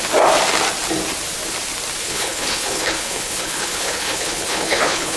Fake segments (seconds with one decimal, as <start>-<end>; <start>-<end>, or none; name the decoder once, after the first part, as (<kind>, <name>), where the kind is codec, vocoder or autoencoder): 2.0-5.2 (codec, HILCodec)